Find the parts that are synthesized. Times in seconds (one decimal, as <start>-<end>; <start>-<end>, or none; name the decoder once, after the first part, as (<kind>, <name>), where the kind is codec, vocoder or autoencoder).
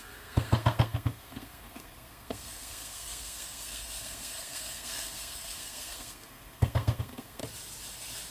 0.0-7.4 (codec, SNAC)